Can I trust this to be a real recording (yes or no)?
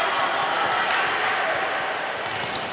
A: yes